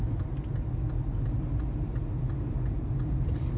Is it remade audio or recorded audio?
recorded